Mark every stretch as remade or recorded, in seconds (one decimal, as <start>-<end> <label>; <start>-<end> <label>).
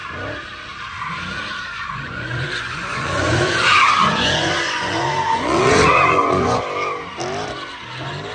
0.0-1.7 recorded; 1.7-6.6 remade; 6.6-8.3 recorded